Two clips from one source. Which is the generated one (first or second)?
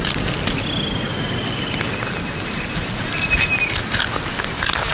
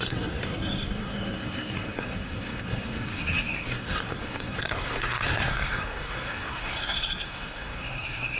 second